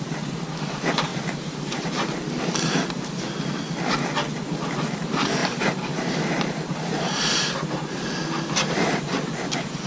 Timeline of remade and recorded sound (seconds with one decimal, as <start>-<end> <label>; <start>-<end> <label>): 0.0-1.1 recorded; 1.1-2.1 remade; 2.1-5.4 recorded; 5.4-8.2 remade; 8.2-9.9 recorded